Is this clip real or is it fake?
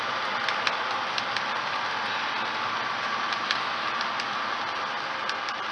real